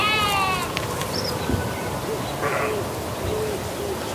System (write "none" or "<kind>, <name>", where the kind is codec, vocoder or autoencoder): none